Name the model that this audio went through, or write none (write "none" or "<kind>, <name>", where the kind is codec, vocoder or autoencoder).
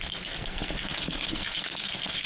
codec, SNAC